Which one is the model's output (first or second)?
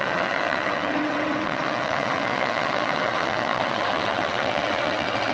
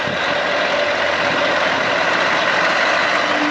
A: first